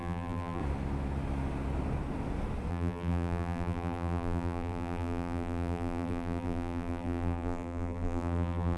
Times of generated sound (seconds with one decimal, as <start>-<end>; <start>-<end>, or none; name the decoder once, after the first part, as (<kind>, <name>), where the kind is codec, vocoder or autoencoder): 0.0-0.6 (vocoder, BigVGAN v2); 2.7-8.8